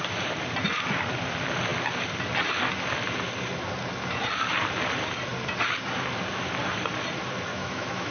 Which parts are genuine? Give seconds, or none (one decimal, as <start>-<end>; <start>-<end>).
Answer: 0.0-7.5